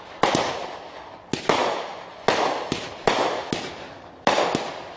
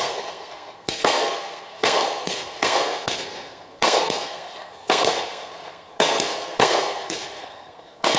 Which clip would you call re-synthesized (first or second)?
second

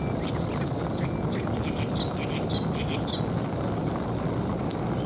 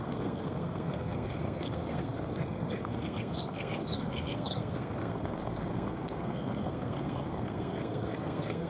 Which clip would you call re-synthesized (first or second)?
second